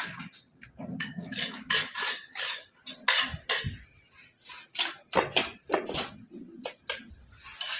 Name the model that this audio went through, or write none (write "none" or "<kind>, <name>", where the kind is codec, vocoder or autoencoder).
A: none